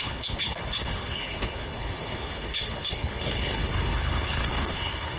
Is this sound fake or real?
fake